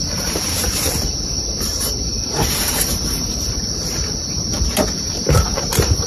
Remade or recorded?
remade